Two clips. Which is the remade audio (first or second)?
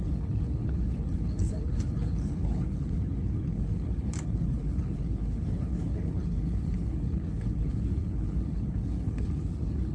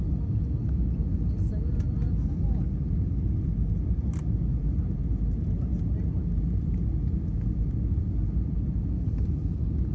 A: first